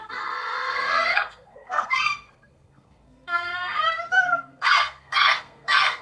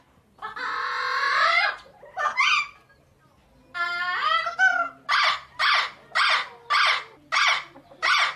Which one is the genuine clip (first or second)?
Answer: second